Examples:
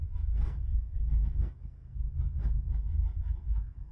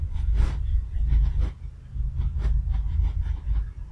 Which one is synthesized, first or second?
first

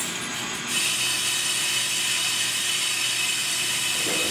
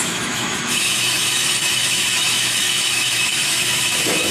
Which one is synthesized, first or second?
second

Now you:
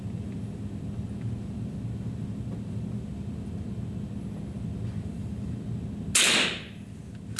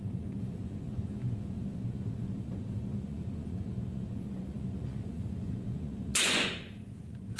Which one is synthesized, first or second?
second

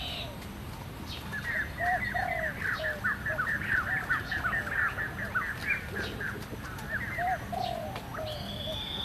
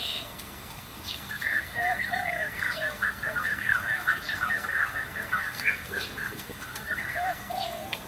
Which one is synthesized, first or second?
second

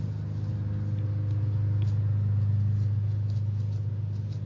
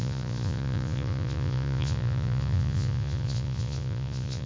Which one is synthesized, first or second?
second